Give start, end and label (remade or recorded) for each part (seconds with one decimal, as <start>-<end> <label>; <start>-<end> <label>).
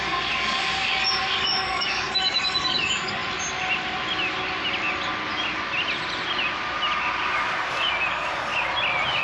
0.0-3.2 remade; 3.2-8.1 recorded; 8.1-8.5 remade; 8.5-9.2 recorded